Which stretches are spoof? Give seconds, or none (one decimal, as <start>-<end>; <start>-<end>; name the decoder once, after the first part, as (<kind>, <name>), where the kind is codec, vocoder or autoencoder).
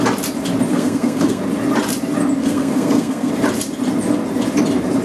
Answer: 0.7-1.4 (codec, SNAC); 2.4-3.3